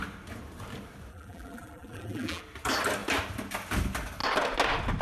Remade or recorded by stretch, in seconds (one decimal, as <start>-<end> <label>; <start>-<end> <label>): 0.0-1.1 recorded; 1.1-2.4 remade; 2.4-5.0 recorded